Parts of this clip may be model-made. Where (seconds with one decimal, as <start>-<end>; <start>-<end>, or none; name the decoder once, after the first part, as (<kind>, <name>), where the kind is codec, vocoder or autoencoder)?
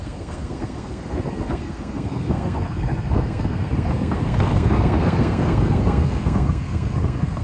0.0-7.4 (codec, SNAC)